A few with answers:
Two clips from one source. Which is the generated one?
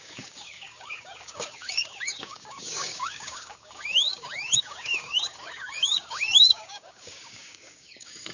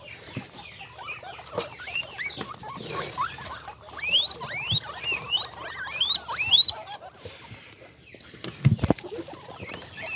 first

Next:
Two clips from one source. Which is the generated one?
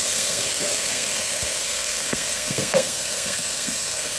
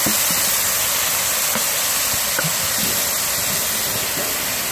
first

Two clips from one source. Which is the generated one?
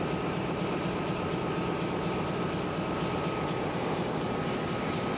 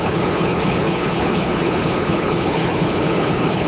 second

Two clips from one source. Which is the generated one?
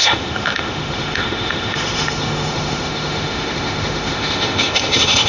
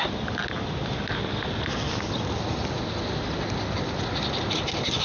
first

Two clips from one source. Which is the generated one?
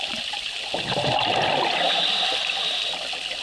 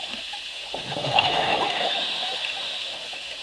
second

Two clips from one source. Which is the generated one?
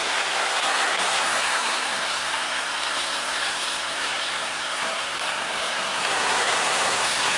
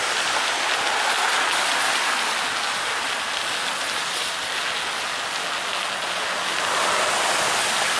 first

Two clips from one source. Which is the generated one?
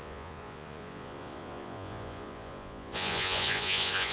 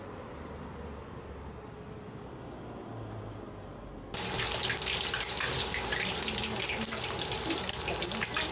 first